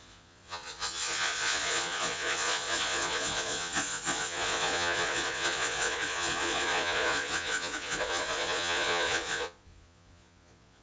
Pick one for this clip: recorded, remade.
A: remade